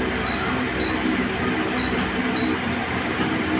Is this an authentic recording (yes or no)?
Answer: yes